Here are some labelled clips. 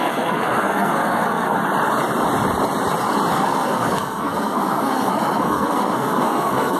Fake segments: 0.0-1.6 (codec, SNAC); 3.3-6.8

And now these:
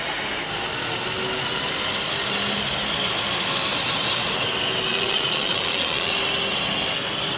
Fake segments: 4.9-6.1 (vocoder, Vocos)

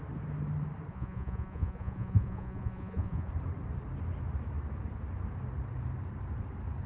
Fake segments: 0.9-3.3 (vocoder, Vocos)

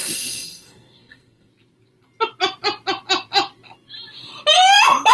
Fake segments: 0.0-1.5 (codec, SNAC)

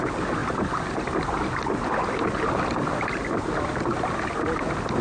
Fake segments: none